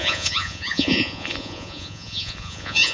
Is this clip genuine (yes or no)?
no